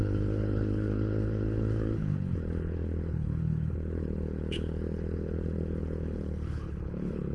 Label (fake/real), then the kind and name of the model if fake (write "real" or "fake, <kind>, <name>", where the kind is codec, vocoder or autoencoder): fake, codec, HILCodec